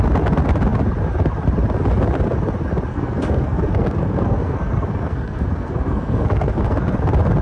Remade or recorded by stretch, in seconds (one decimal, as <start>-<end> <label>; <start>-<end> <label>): 0.0-2.9 recorded; 2.9-7.0 remade; 7.0-7.4 recorded